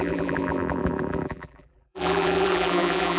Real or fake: fake